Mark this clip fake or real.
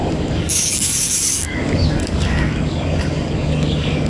fake